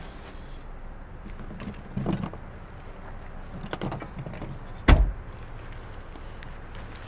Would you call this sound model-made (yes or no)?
no